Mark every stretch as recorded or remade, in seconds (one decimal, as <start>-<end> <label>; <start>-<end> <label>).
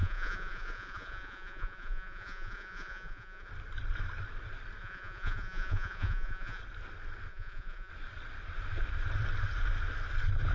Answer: 0.0-3.5 remade; 3.5-4.8 recorded; 4.8-6.6 remade; 6.6-7.3 recorded; 7.3-7.9 remade; 7.9-10.5 recorded